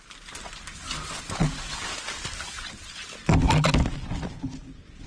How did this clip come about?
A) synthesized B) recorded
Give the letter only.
B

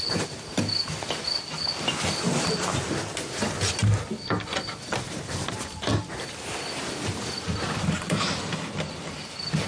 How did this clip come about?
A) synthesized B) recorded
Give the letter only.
B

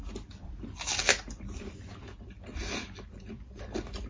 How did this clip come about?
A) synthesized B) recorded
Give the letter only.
B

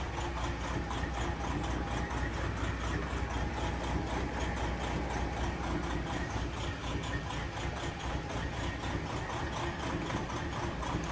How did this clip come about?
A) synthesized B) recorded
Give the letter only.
B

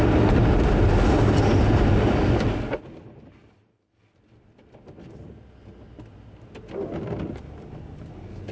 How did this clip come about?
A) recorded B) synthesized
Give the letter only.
A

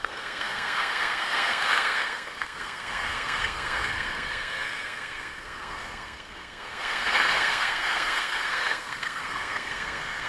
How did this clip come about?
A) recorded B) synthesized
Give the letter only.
B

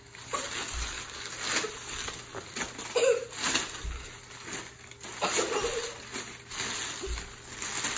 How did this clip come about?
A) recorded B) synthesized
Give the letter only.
A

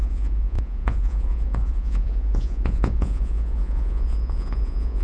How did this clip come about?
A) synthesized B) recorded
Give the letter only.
A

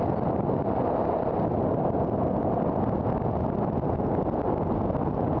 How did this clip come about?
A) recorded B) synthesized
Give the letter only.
A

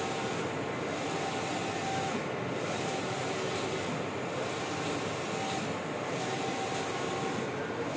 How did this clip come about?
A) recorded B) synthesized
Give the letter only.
A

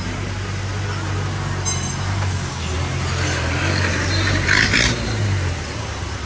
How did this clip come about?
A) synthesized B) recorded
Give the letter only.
B